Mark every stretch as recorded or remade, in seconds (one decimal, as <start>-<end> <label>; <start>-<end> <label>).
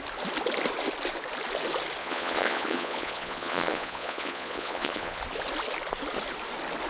0.0-2.0 recorded; 2.0-5.2 remade; 5.2-6.9 recorded